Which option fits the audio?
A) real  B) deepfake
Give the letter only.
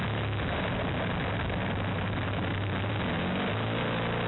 A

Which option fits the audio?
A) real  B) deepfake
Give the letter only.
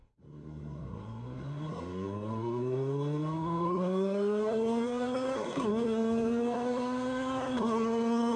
B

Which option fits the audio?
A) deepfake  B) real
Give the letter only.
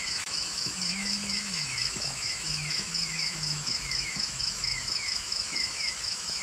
A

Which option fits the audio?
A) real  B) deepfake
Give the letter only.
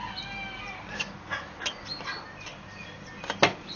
A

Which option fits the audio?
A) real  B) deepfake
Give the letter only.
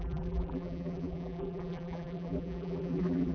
B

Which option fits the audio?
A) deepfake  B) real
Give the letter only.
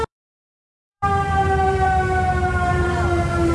A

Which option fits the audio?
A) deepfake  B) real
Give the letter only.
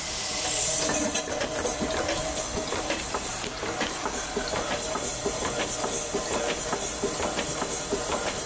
B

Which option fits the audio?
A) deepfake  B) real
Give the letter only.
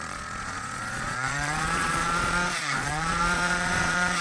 A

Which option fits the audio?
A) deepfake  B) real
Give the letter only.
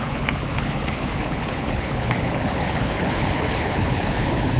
A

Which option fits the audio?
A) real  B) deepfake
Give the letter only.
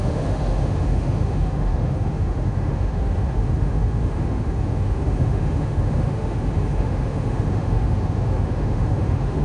B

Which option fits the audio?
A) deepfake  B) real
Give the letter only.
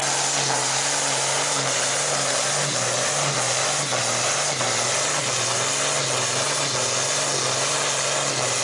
B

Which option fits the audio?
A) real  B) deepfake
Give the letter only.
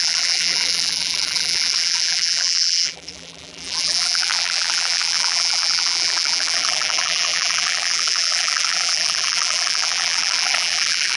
B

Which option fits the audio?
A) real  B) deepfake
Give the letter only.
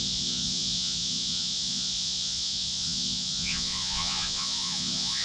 B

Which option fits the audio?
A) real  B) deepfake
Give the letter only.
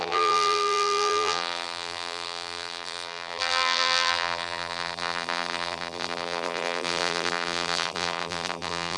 B